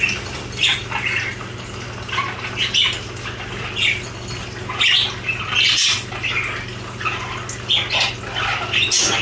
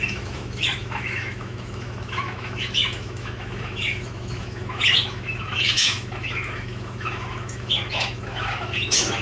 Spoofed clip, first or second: second